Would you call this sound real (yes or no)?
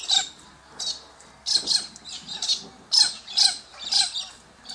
yes